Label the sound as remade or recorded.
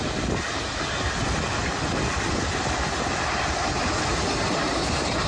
recorded